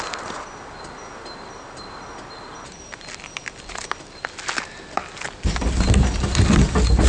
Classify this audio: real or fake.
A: real